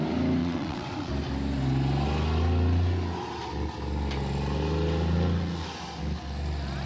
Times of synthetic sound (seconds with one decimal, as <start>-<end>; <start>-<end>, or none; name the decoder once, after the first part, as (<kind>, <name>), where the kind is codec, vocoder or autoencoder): 0.4-1.1 (vocoder, WaveNeXt)